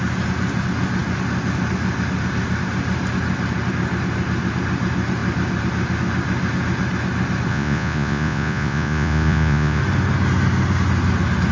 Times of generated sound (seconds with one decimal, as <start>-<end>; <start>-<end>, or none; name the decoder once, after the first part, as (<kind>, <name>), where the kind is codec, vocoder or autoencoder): 7.5-9.8 (vocoder, Vocos)

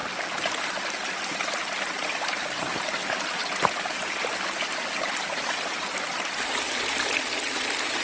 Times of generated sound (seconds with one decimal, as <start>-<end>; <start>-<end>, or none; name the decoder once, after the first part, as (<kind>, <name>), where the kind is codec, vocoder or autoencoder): none